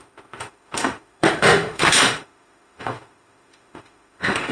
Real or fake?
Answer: fake